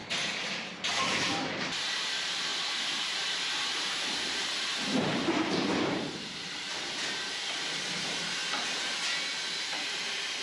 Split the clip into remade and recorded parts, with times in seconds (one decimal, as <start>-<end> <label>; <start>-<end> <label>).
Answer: 0.0-8.4 remade; 8.4-9.4 recorded; 9.4-10.4 remade